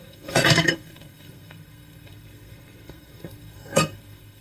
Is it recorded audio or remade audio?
remade